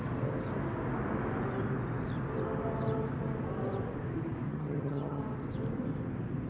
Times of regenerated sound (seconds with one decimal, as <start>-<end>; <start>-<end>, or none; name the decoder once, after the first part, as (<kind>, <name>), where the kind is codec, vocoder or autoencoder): 4.5-5.2 (vocoder, HiFi-GAN)

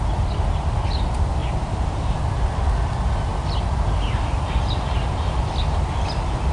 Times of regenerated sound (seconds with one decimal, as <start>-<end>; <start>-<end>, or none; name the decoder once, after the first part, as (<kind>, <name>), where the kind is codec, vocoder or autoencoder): 1.4-2.2 (vocoder, BigVGAN v2)